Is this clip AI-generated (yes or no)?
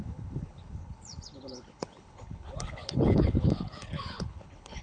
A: yes